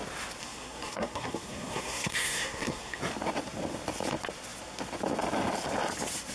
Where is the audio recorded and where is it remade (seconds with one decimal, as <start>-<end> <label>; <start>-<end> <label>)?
0.0-0.4 recorded; 0.4-3.0 remade; 3.0-6.3 recorded